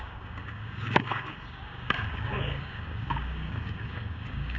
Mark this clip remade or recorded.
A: remade